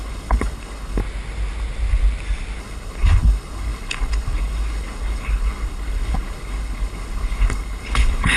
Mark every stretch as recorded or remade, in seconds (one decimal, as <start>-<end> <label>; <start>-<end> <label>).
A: 0.0-1.0 remade; 1.0-2.6 recorded; 2.6-8.4 remade